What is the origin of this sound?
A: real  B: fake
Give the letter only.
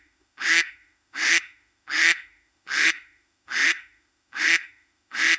B